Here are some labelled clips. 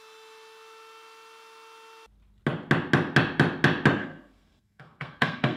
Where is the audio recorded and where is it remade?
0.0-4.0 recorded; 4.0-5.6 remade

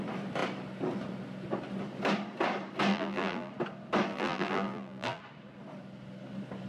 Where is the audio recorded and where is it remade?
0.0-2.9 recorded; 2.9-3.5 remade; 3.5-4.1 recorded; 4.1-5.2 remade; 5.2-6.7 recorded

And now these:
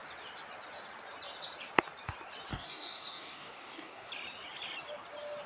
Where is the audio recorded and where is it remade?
0.0-2.5 recorded; 2.5-4.1 remade; 4.1-5.5 recorded

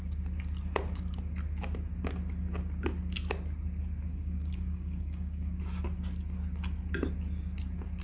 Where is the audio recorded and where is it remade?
0.0-4.1 recorded; 4.1-5.6 remade; 5.6-8.0 recorded

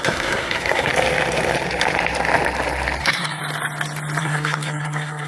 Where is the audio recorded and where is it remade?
0.0-0.9 remade; 0.9-3.0 recorded; 3.0-3.4 remade; 3.4-4.2 recorded; 4.2-5.3 remade

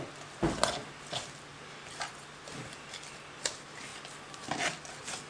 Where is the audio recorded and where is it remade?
0.0-5.3 recorded